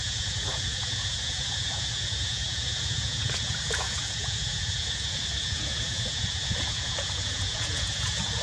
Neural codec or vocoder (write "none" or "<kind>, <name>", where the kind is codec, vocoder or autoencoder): vocoder, Vocos